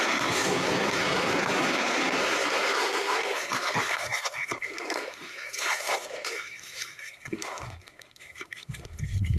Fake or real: fake